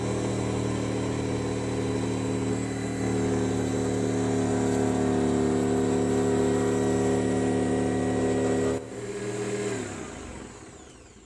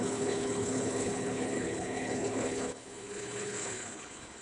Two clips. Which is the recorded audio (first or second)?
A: first